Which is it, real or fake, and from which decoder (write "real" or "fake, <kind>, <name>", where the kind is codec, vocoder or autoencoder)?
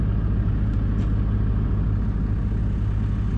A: real